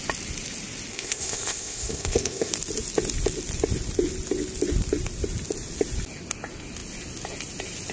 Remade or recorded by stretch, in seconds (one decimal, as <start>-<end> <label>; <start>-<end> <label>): 0.0-0.9 recorded; 0.9-2.5 remade; 2.5-7.9 recorded